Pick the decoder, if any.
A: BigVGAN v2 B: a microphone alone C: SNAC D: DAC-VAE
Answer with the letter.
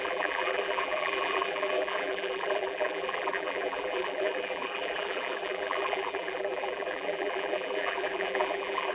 A